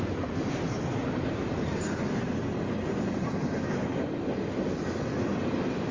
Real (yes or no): yes